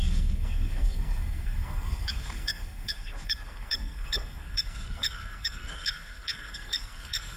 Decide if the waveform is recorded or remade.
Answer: remade